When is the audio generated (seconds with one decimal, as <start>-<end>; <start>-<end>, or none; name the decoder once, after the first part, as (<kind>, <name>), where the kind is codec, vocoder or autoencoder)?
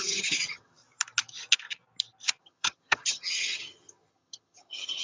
0.0-0.8 (vocoder, HiFi-GAN); 2.4-5.0